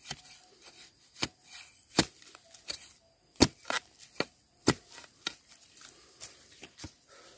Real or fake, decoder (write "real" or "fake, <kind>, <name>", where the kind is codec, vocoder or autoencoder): real